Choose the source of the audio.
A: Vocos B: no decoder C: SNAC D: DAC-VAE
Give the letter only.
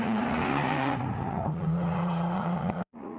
A